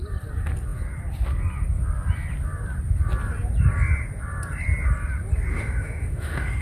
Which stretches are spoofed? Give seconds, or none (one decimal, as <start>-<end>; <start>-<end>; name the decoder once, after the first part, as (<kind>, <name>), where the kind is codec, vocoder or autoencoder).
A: 5.5-6.6 (autoencoder, DAC-VAE)

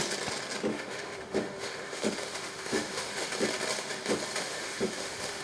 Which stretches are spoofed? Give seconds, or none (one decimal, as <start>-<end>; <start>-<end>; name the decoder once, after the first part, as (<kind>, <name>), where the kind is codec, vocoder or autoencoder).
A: 0.7-3.3 (autoencoder, DAC-VAE); 4.4-5.4

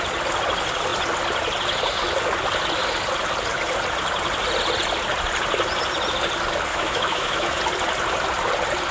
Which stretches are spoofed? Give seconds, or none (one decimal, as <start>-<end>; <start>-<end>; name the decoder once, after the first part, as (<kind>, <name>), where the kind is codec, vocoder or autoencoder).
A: 6.7-7.6 (autoencoder, DAC-VAE)